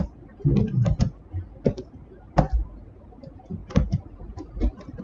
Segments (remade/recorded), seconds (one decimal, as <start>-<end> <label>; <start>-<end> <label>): 0.0-5.0 remade